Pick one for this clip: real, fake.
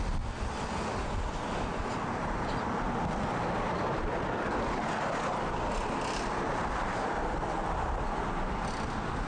real